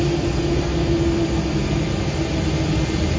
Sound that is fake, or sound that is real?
real